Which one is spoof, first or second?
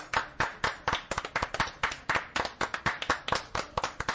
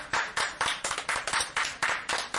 second